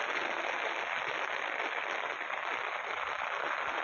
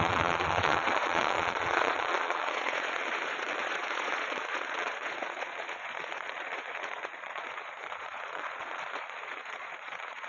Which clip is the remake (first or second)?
second